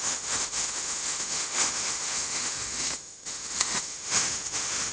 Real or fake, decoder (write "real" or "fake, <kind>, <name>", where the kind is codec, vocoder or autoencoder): fake, autoencoder, DAC-VAE